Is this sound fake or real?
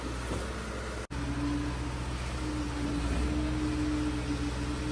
real